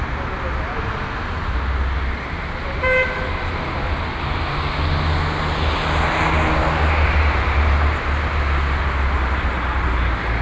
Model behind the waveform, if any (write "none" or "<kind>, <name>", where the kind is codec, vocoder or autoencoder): none